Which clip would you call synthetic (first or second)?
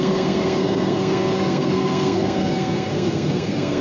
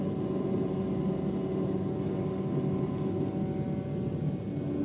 first